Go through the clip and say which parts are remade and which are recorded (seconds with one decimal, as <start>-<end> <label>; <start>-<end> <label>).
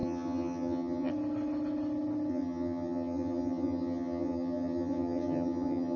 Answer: 0.0-1.1 remade; 1.1-2.3 recorded; 2.3-6.0 remade